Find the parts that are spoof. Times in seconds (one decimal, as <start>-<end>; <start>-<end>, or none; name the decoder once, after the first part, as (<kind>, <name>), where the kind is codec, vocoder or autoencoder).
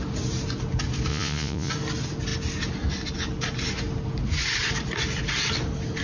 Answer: 1.1-1.7 (vocoder, Vocos)